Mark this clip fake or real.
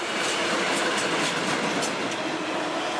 real